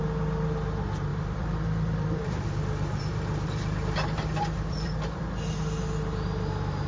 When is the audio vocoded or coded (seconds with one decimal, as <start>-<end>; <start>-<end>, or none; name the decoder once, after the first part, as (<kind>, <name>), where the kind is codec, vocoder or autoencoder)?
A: 1.1-5.2 (vocoder, BigVGAN v2)